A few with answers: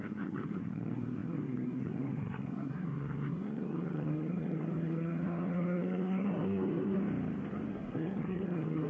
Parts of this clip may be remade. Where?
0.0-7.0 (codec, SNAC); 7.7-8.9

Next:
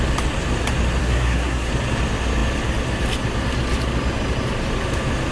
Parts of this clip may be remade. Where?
1.0-1.7 (codec, SNAC)